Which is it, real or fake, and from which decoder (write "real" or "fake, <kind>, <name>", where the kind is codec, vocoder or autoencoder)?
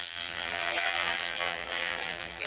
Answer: fake, vocoder, BigVGAN v2